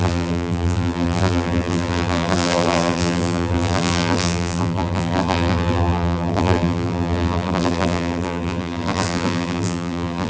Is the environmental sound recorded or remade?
remade